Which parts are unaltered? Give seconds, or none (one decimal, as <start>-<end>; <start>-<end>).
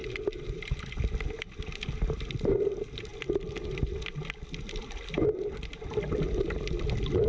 0.0-7.3